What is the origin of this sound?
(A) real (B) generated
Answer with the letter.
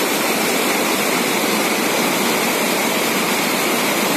B